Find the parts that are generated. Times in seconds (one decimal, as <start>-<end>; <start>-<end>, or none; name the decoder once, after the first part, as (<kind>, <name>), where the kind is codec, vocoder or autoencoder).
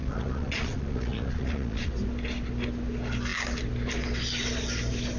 0.0-1.9 (vocoder, Vocos)